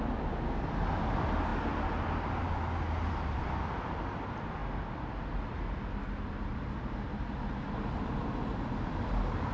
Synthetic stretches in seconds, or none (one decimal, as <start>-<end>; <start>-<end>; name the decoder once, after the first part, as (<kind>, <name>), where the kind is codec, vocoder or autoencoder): none